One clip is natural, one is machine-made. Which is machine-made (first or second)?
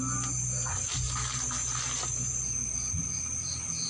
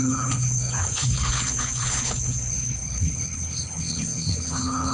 second